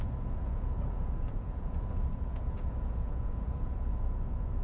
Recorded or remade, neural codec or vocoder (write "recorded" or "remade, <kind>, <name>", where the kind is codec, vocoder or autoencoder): remade, vocoder, Vocos